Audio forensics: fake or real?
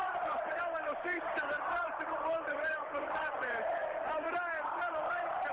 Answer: real